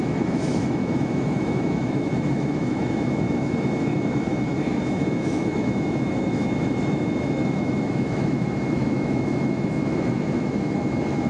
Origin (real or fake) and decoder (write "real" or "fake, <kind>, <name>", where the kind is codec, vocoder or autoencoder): fake, autoencoder, DAC-VAE